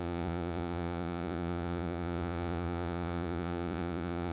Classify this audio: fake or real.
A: fake